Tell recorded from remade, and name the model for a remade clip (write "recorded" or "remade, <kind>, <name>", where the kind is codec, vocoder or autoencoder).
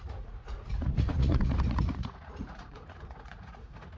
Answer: remade, vocoder, Vocos